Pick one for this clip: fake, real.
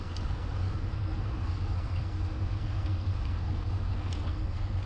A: fake